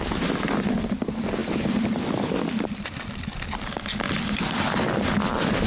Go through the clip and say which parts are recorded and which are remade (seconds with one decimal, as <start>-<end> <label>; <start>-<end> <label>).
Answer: 0.0-1.4 recorded; 1.4-4.8 remade; 4.8-5.7 recorded